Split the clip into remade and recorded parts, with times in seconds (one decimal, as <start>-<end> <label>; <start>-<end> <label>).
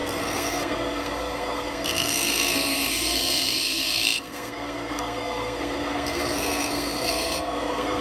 0.0-8.0 remade